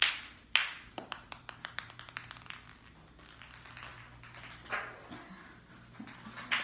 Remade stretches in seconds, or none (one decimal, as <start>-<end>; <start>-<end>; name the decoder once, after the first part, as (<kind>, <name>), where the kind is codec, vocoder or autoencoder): 0.6-2.0 (vocoder, BigVGAN v2)